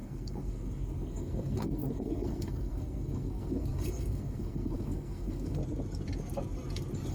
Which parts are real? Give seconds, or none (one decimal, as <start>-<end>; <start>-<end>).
5.6-7.1